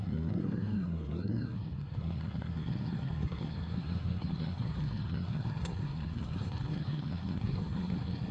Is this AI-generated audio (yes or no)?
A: yes